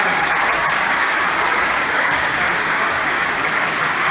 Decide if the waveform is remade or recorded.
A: remade